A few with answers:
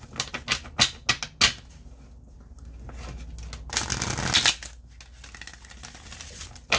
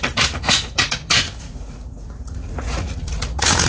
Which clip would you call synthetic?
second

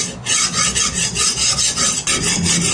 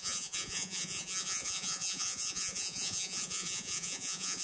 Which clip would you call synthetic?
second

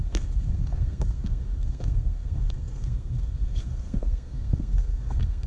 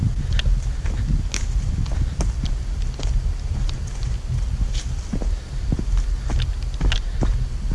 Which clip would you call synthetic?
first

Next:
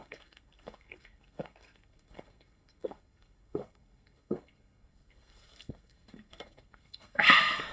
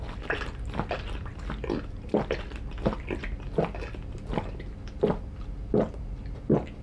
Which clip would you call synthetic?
first